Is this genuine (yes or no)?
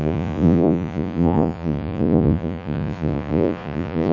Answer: no